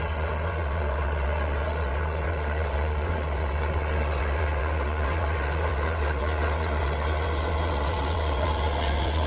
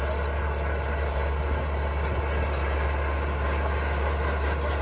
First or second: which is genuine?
second